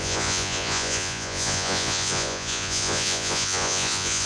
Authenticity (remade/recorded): remade